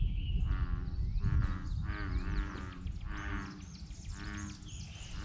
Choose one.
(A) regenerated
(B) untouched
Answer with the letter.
B